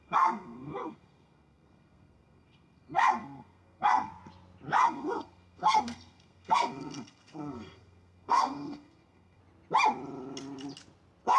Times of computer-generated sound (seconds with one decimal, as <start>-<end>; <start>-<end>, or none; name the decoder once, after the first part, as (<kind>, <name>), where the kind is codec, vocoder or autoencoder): 0.0-4.1 (codec, SNAC); 4.8-9.4